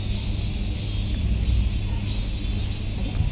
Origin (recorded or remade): recorded